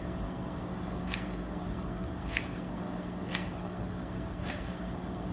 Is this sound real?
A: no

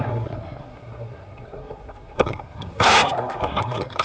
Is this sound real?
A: no